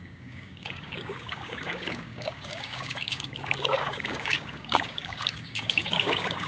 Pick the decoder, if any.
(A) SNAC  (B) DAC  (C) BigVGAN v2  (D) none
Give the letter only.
B